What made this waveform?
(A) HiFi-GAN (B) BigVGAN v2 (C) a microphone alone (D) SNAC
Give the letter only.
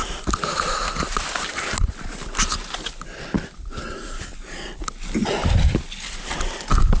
C